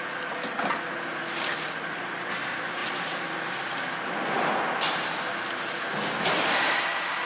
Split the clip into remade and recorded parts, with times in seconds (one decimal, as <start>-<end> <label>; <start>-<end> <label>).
0.0-7.3 recorded